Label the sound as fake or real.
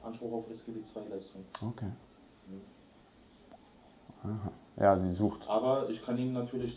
fake